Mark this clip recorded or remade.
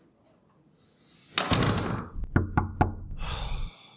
recorded